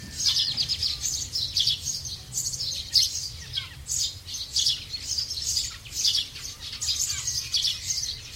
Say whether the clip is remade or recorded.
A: recorded